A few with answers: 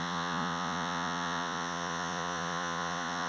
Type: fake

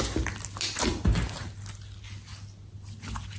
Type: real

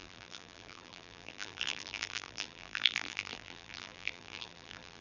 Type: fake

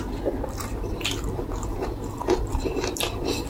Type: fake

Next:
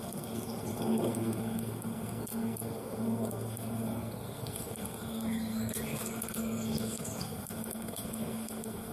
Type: fake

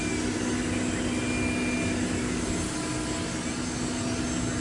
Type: real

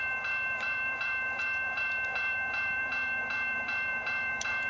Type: fake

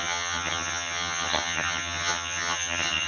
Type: fake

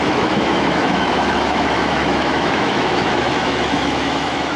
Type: fake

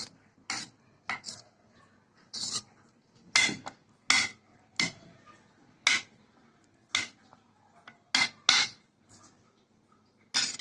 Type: real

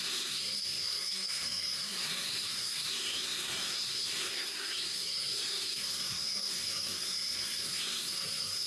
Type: fake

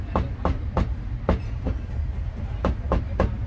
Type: real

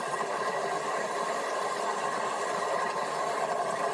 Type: real